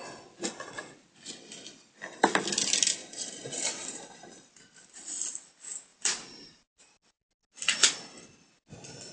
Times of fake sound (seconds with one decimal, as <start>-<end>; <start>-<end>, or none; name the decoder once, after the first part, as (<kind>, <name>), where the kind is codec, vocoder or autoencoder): 3.0-5.1 (vocoder, BigVGAN v2); 5.9-6.8